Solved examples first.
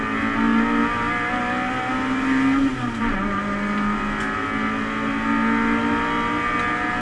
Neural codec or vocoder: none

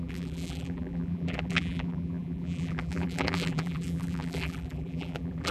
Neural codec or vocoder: vocoder, BigVGAN v2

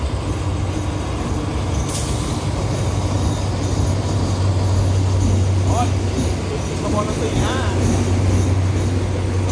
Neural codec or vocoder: none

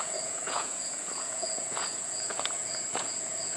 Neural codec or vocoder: vocoder, Vocos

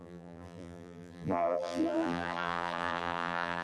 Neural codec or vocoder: vocoder, BigVGAN v2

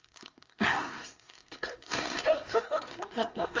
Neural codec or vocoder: codec, SNAC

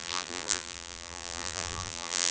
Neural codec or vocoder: vocoder, BigVGAN v2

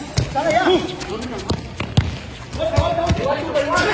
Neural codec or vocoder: none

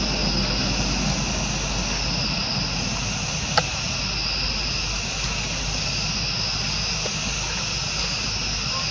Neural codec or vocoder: none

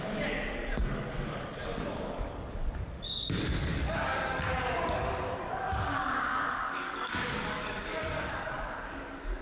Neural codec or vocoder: codec, DAC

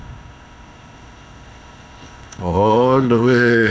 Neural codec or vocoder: codec, ZipCodec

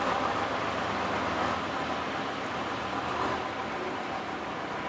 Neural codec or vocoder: none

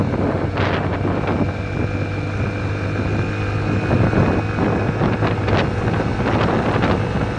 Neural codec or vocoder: none